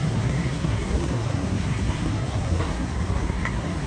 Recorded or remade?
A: remade